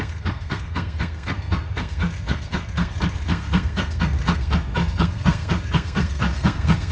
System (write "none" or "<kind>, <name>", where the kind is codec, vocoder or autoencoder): codec, SNAC